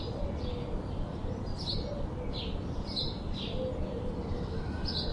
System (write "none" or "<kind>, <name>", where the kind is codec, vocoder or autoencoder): none